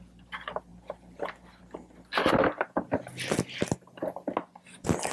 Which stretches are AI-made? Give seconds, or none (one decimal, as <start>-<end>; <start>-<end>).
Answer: 0.7-1.6

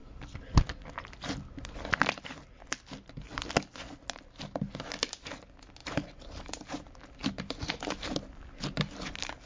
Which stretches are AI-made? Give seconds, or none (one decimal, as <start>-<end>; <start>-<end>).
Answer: 5.8-6.7; 7.2-8.1

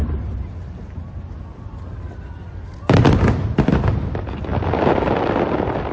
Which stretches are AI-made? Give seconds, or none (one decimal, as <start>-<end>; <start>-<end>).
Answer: none